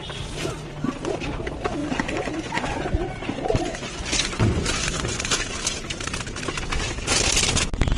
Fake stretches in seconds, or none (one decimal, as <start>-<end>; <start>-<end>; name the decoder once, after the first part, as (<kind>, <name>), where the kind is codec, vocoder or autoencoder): 1.8-5.4 (vocoder, Vocos)